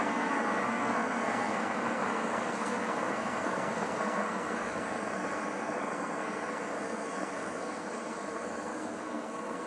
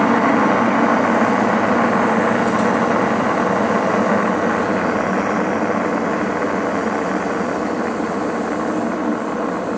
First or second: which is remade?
first